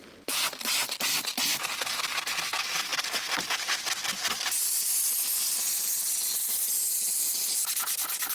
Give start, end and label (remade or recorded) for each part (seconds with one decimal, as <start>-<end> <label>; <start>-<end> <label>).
0.0-8.3 recorded

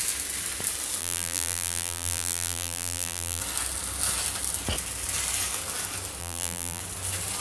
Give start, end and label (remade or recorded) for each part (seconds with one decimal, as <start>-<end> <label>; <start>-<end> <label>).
0.0-1.0 recorded; 1.0-3.4 remade; 3.4-6.2 recorded; 6.2-6.8 remade; 6.8-7.4 recorded

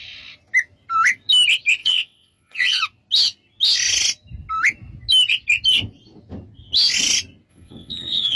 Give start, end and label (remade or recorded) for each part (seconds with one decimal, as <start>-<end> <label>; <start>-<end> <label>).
0.0-1.8 recorded; 1.8-2.8 remade; 2.8-7.5 recorded; 7.5-8.4 remade

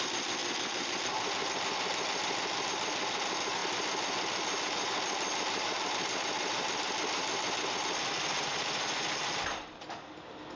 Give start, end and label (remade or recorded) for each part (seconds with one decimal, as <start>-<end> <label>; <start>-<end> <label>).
0.0-10.6 recorded